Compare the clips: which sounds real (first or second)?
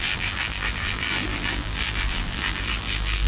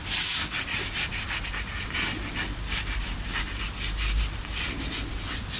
second